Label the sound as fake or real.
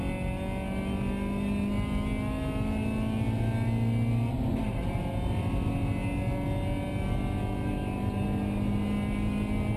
real